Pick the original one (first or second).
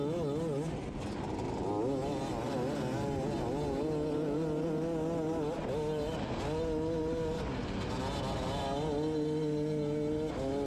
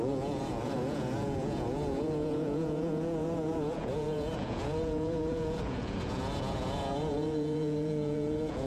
first